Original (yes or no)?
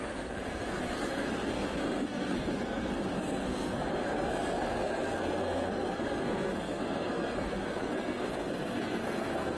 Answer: no